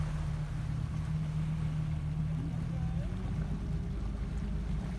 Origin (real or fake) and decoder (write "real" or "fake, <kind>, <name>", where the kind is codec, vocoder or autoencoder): real